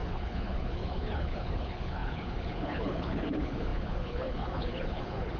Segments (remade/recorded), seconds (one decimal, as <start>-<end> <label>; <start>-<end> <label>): 0.0-5.4 remade